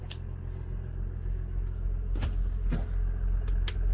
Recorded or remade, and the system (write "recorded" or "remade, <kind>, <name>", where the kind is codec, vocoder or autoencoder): recorded